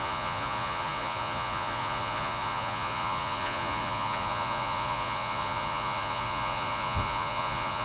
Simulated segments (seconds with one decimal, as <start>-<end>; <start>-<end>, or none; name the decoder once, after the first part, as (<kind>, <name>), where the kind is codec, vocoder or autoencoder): 0.0-7.8 (vocoder, Vocos)